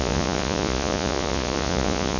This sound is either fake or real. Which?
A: fake